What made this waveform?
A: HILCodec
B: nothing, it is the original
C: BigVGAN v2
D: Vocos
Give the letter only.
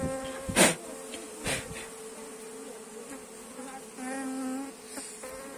B